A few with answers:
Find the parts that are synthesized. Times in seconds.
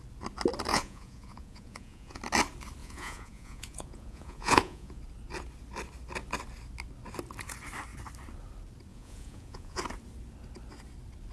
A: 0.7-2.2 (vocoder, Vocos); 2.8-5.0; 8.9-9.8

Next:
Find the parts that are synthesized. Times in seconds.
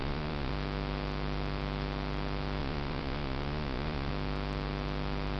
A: 0.0-0.5 (vocoder, Vocos); 2.6-4.1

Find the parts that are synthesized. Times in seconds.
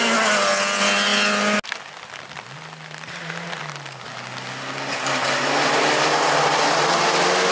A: none